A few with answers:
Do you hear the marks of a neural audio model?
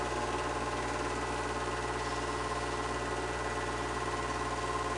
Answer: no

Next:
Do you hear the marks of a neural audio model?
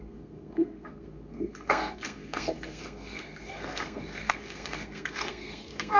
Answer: yes